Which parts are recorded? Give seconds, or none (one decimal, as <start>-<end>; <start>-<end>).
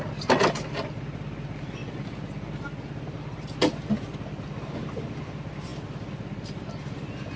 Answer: 0.0-7.4